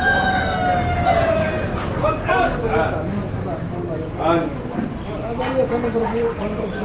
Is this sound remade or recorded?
recorded